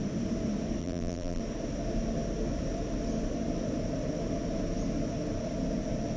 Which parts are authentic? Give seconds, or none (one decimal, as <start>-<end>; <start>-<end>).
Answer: 0.0-0.8; 1.4-6.2